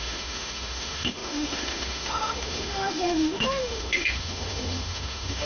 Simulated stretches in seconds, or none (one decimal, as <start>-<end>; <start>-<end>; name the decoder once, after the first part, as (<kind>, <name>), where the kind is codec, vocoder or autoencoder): 0.0-5.5 (autoencoder, DAC-VAE)